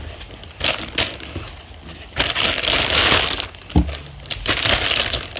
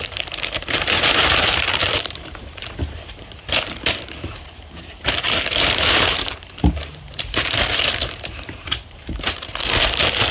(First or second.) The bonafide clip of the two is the first